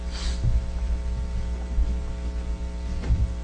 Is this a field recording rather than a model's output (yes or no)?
yes